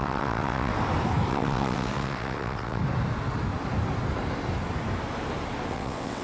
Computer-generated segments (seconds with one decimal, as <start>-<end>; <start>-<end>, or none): 0.0-0.7; 1.3-2.8; 5.7-6.2